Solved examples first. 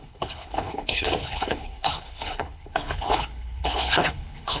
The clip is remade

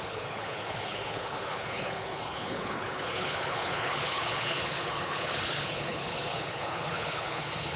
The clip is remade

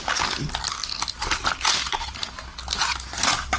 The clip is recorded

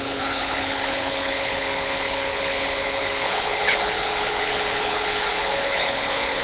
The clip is remade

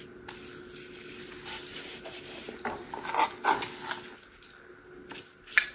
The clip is recorded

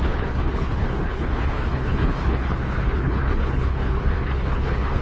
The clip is remade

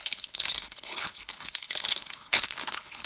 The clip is remade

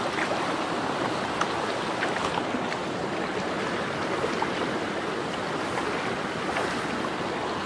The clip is recorded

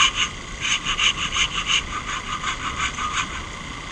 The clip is recorded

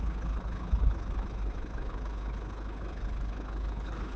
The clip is remade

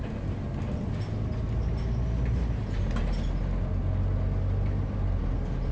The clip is recorded